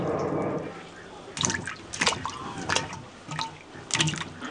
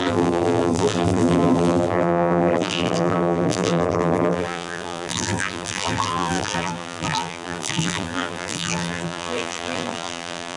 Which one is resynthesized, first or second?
second